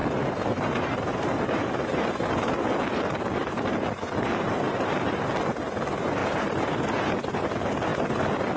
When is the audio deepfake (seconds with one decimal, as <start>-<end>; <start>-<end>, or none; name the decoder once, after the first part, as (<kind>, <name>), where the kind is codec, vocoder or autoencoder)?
0.0-2.3 (vocoder, BigVGAN v2); 3.4-5.3; 6.2-7.5